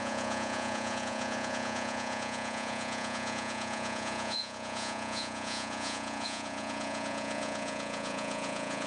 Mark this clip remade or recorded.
remade